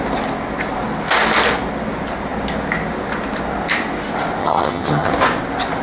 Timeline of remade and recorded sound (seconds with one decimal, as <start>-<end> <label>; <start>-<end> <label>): 0.0-4.4 recorded; 4.4-5.1 remade; 5.1-5.8 recorded